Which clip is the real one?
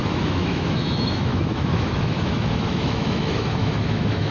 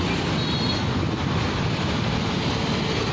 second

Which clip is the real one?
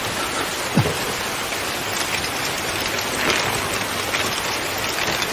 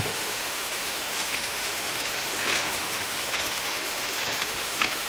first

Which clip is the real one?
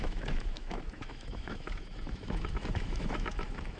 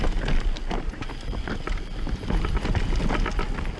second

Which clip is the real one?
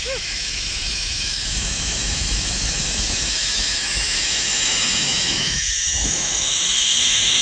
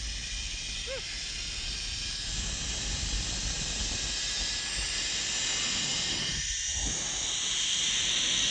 second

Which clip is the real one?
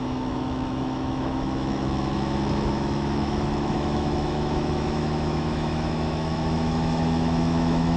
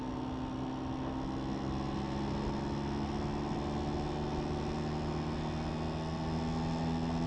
second